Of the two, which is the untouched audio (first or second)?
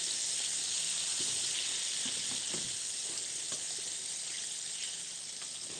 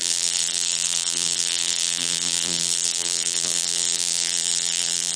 first